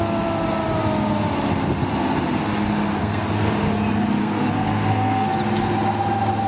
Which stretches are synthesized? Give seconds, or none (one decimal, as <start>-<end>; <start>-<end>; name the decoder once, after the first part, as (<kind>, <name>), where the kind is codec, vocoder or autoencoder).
3.0-3.5 (codec, SNAC); 4.2-5.3